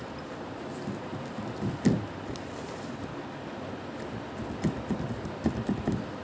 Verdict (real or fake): real